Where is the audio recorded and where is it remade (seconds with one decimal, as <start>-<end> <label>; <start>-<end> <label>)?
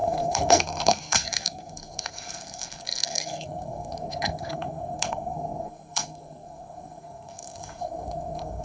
0.0-8.6 remade